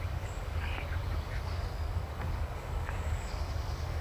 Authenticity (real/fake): fake